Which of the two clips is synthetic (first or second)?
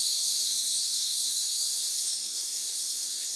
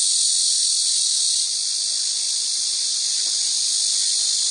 first